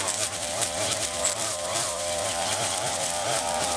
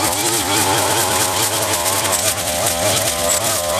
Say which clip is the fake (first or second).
first